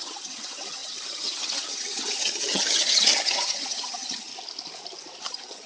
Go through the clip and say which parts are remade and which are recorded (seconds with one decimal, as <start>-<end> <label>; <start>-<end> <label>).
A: 0.0-4.3 remade; 4.3-5.2 recorded; 5.2-5.7 remade